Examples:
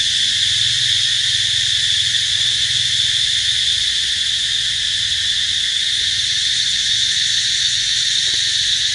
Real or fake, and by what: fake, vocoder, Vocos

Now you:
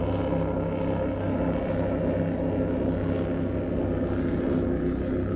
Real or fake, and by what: real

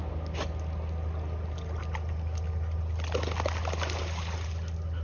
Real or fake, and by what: real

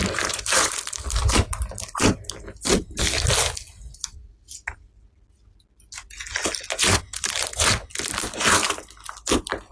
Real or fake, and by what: real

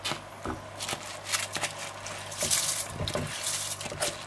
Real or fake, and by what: real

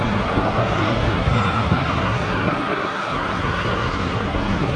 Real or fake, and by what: fake, codec, SNAC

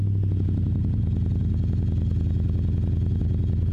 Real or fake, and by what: real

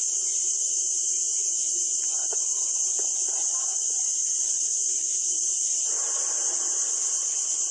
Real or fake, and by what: real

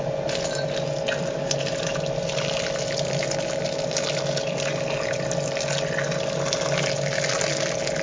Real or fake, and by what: real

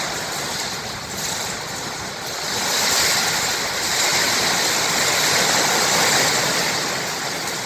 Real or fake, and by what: real